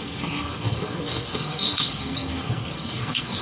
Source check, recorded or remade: remade